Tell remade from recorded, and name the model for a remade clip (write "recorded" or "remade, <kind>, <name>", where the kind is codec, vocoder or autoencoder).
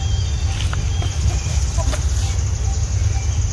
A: recorded